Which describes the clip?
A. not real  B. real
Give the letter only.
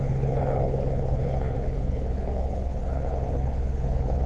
A